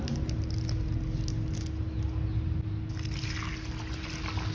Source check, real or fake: real